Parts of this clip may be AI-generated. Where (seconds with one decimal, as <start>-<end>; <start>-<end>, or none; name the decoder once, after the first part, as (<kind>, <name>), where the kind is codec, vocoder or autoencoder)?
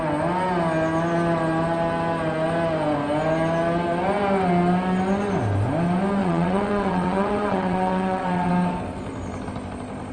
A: 6.2-8.5 (vocoder, WaveNeXt)